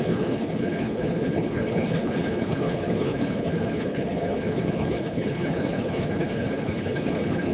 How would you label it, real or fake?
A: fake